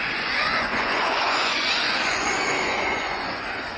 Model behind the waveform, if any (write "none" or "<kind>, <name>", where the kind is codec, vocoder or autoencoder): vocoder, Vocos